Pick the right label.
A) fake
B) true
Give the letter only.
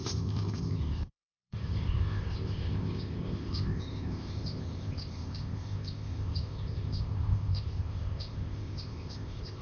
A